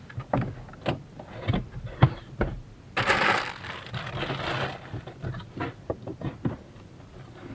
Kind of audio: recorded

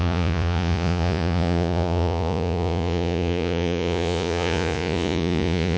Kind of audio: remade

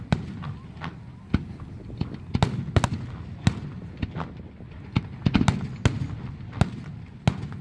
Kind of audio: recorded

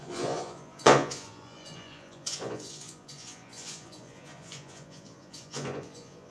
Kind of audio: remade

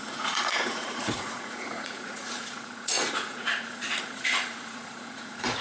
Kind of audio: remade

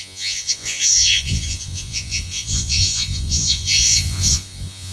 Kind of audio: remade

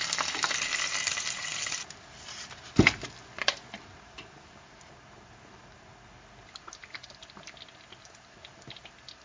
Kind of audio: recorded